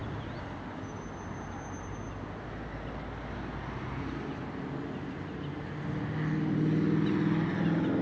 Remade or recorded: recorded